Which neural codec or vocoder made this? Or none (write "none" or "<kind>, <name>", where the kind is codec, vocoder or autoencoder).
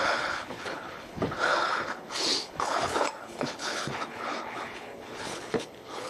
codec, HILCodec